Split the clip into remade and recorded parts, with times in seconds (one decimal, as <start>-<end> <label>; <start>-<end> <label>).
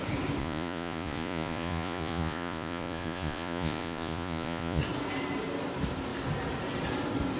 0.0-0.4 recorded; 0.4-4.8 remade; 4.8-7.4 recorded